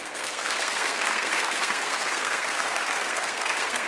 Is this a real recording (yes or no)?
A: no